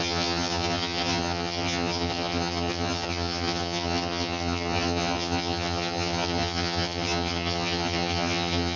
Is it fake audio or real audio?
fake